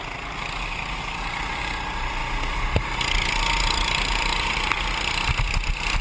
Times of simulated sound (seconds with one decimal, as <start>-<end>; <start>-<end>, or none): none